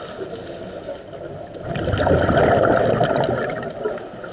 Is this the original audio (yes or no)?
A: yes